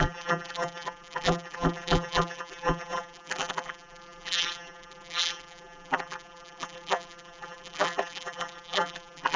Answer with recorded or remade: remade